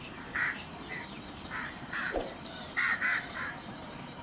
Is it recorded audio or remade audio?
remade